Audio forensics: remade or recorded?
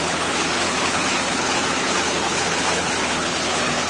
remade